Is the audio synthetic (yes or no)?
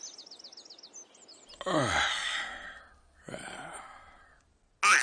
no